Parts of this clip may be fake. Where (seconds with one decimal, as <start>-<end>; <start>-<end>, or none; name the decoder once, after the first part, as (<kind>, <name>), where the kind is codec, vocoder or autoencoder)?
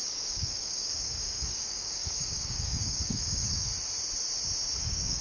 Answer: 0.0-3.7 (codec, DAC); 4.8-5.2